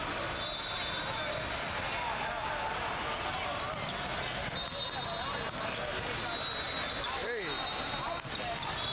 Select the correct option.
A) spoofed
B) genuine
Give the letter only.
B